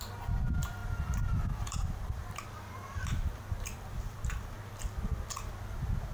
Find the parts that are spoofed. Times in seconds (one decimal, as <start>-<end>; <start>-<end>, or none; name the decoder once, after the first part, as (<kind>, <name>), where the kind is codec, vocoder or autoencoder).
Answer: 0.8-4.5 (vocoder, BigVGAN v2)